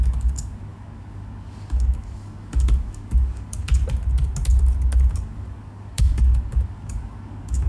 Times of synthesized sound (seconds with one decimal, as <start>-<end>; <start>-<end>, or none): 0.0-3.8; 5.1-7.7